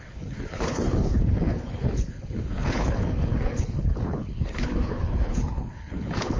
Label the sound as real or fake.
fake